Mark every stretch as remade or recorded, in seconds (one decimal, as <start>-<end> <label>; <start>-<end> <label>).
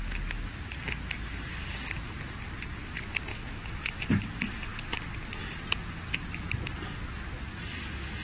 0.0-3.3 recorded; 3.3-4.0 remade; 4.0-8.2 recorded